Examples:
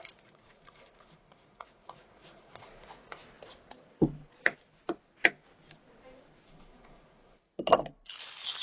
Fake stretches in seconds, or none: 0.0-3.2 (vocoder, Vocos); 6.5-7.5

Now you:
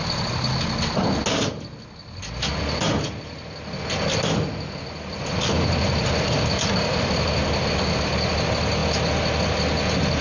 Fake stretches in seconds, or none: none

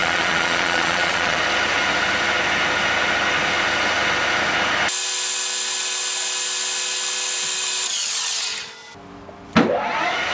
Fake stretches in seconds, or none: 0.0-1.4 (vocoder, Vocos)

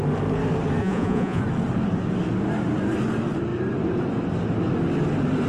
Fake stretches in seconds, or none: 0.8-1.4 (vocoder, Vocos)

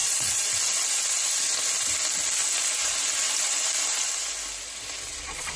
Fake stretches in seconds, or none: 0.0-0.5 (vocoder, Vocos); 5.1-5.6